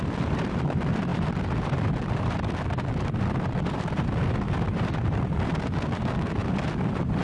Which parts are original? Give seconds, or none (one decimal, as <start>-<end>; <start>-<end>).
0.0-1.1; 5.4-6.4